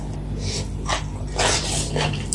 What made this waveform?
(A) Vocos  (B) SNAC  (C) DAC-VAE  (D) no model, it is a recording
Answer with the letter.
D